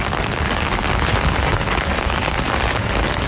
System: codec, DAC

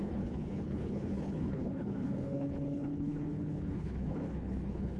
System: codec, HILCodec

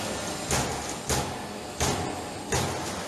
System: none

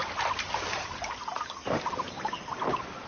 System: none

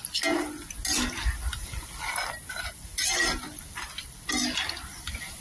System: none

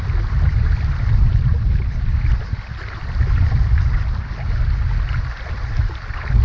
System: none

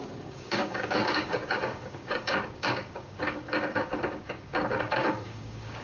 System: codec, DAC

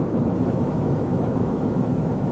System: autoencoder, DAC-VAE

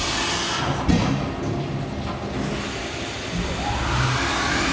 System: none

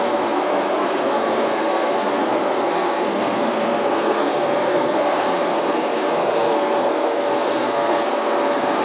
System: codec, SNAC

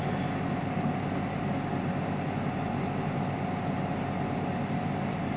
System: none